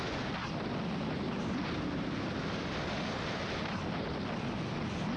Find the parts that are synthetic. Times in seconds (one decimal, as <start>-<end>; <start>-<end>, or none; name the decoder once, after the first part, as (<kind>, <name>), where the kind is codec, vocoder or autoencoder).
none